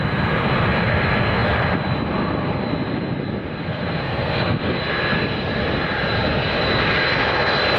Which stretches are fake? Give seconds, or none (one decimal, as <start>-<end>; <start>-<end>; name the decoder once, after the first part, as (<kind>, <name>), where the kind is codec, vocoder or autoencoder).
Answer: 3.6-4.8 (codec, SNAC)

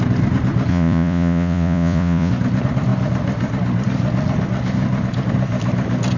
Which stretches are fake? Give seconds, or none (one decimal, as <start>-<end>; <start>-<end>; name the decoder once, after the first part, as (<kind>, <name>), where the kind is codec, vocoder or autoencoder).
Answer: 0.7-2.3 (vocoder, Vocos)

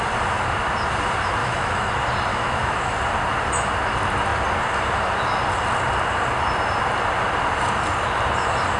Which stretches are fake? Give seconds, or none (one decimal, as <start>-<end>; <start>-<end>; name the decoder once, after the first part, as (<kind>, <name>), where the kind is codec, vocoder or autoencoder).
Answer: 1.4-1.9 (autoencoder, DAC-VAE); 2.3-2.9

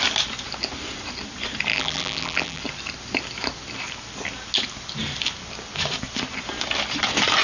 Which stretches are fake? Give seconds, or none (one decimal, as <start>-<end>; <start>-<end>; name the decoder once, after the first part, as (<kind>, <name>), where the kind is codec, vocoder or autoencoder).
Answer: 1.7-2.6 (vocoder, BigVGAN v2)

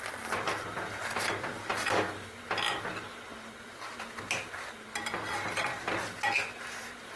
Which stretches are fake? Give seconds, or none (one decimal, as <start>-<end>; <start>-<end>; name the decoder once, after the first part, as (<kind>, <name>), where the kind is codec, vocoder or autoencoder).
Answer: none

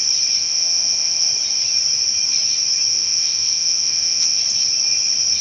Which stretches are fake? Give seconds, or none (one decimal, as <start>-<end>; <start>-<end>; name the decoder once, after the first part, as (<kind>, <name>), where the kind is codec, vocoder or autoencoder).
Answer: 0.4-1.3 (vocoder, WaveNeXt); 2.9-4.4

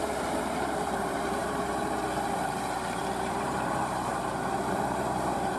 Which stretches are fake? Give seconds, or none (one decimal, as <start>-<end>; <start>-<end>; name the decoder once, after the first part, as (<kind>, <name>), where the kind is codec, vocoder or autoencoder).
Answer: 0.0-5.6 (vocoder, BigVGAN v2)